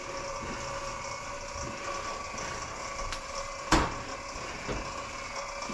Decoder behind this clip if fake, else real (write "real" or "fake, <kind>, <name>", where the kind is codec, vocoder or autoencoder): real